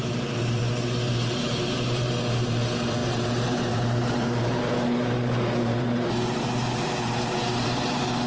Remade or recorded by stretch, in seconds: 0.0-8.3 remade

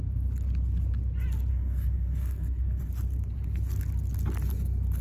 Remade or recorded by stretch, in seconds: 0.0-1.5 recorded; 1.5-2.9 remade; 2.9-5.0 recorded

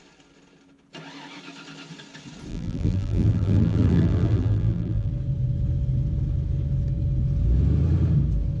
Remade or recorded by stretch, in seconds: 0.0-2.5 recorded; 2.5-5.1 remade; 5.1-8.6 recorded

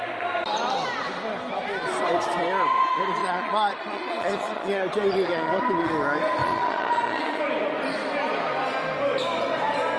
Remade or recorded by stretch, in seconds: 0.0-3.2 recorded; 3.2-5.9 remade; 5.9-6.4 recorded; 6.4-7.4 remade; 7.4-10.0 recorded

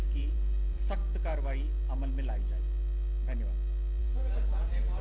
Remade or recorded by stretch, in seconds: 0.0-1.0 remade; 1.0-4.0 recorded; 4.0-5.0 remade

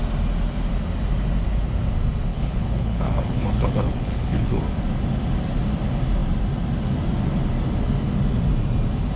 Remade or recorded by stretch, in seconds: 0.0-2.3 recorded; 2.3-4.6 remade; 4.6-9.2 recorded

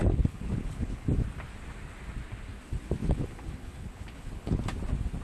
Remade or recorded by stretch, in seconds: 0.0-1.1 remade; 1.1-3.0 recorded; 3.0-4.6 remade; 4.6-5.2 recorded

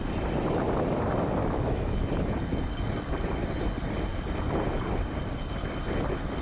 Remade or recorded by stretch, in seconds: 0.0-1.4 recorded; 1.4-2.1 remade; 2.1-6.4 recorded